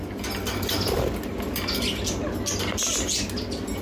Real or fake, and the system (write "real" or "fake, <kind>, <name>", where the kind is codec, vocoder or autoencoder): real